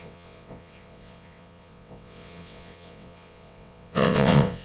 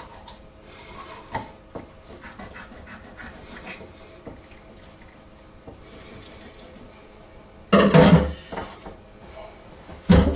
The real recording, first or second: second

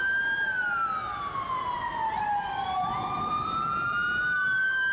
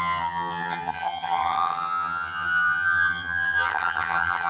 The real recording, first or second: first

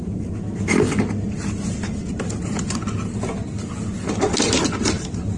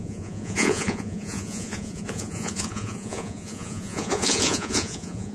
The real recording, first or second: first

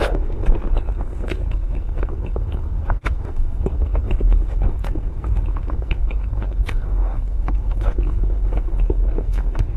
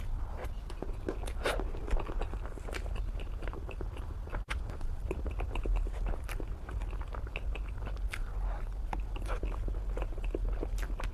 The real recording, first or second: second